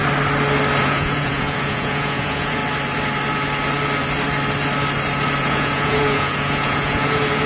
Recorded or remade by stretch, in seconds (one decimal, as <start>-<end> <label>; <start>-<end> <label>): 0.0-0.8 recorded; 0.8-2.6 remade; 2.6-5.4 recorded; 5.4-7.5 remade